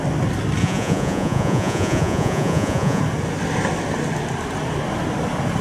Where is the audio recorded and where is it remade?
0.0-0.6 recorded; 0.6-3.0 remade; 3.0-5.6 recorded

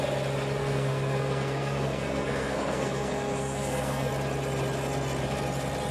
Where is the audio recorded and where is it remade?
0.0-0.6 recorded; 0.6-4.1 remade; 4.1-5.9 recorded

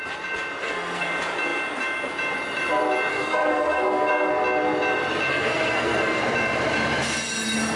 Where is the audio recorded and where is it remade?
0.0-0.6 recorded; 0.6-1.1 remade; 1.1-3.1 recorded; 3.1-4.3 remade; 4.3-5.3 recorded; 5.3-6.2 remade; 6.2-7.8 recorded

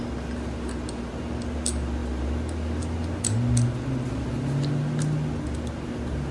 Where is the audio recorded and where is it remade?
0.0-6.3 recorded

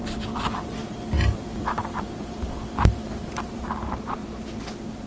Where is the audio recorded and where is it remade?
0.0-0.8 remade; 0.8-3.4 recorded; 3.4-5.1 remade

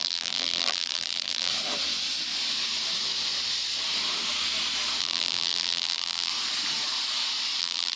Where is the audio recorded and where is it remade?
0.0-1.5 remade; 1.5-5.0 recorded; 5.0-6.3 remade; 6.3-7.6 recorded; 7.6-8.0 remade

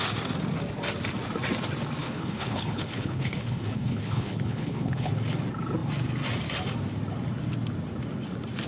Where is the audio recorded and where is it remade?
0.0-2.0 recorded; 2.0-5.1 remade; 5.1-8.7 recorded